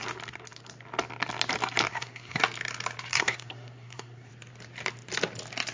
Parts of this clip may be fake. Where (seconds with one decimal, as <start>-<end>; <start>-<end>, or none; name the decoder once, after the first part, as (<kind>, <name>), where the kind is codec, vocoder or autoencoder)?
1.9-2.4 (codec, SNAC); 3.1-4.3